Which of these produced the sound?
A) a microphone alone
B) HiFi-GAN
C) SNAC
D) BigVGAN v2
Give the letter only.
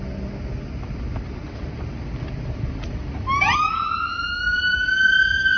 A